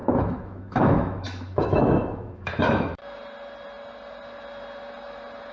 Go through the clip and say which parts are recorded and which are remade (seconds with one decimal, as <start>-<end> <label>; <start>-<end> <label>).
0.0-3.0 remade; 3.0-5.5 recorded